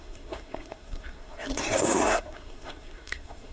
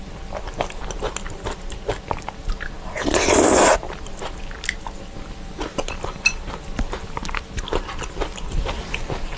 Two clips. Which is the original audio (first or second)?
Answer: second